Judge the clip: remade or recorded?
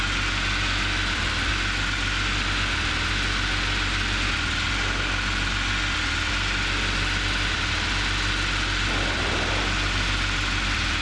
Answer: recorded